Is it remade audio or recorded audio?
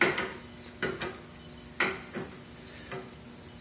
recorded